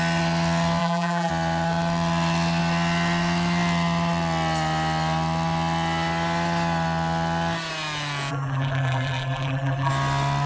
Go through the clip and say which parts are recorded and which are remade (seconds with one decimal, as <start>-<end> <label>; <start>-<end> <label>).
0.0-0.8 recorded; 0.8-1.3 remade; 1.3-8.3 recorded; 8.3-9.9 remade; 9.9-10.5 recorded